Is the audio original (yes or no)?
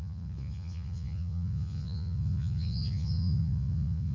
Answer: no